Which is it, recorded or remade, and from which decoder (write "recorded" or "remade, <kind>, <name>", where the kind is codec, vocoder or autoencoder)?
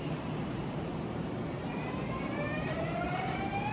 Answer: remade, vocoder, BigVGAN v2